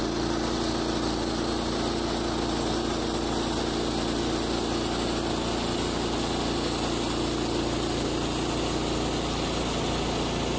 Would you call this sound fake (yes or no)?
no